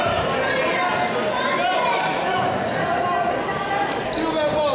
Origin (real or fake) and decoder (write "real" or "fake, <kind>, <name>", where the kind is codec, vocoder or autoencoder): real